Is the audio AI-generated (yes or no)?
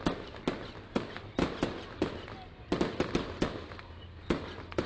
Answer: no